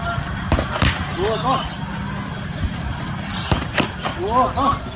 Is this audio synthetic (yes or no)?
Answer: no